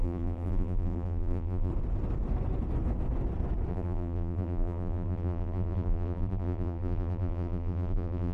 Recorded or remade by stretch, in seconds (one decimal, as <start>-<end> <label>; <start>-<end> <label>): 0.0-1.7 remade; 1.7-3.7 recorded; 3.7-8.3 remade